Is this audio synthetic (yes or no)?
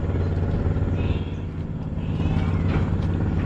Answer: no